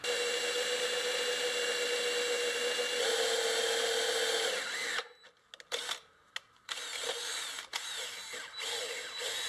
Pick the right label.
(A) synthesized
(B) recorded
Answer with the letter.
B